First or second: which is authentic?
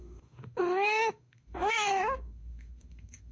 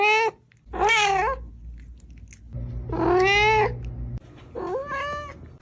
second